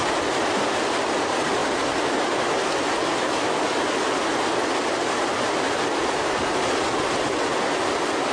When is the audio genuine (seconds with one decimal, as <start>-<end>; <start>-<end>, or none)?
0.0-8.3